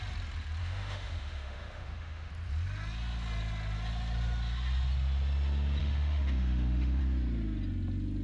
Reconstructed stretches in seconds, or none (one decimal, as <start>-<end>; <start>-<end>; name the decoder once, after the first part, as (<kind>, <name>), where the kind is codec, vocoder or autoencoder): 0.6-2.3 (autoencoder, DAC-VAE); 5.8-7.0